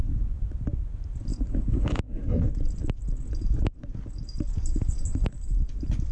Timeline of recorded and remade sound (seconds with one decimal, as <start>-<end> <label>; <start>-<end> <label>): 0.0-1.3 recorded; 1.3-2.2 remade; 2.2-6.1 recorded